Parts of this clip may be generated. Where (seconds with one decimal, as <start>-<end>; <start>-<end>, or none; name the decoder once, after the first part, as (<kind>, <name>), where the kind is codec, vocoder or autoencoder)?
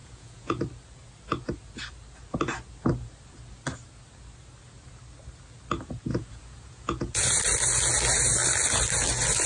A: 0.0-0.6 (vocoder, Vocos); 6.1-7.4